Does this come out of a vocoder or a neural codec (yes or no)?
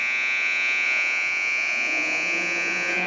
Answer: yes